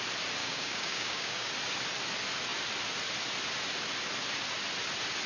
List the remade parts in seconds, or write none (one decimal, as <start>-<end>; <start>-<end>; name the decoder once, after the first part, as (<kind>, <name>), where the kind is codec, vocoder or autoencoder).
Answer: 0.4-1.5 (codec, DAC)